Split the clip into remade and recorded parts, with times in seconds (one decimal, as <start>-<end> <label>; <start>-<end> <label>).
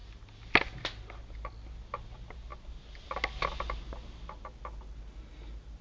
0.0-5.8 recorded